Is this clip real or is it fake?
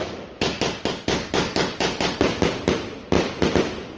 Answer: real